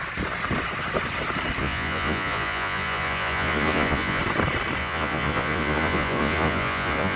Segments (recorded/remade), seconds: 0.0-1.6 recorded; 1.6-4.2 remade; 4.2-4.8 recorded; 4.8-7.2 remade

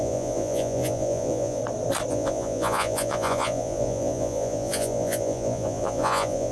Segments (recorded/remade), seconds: 0.0-1.6 remade; 1.6-2.1 recorded; 2.1-6.5 remade

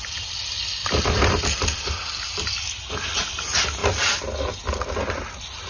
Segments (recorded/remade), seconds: 0.0-5.7 recorded

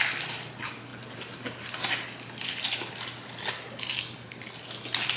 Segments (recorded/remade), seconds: 0.0-5.2 recorded